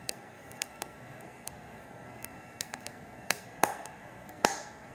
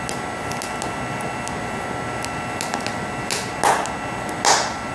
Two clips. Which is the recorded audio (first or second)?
second